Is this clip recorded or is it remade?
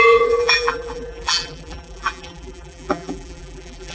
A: remade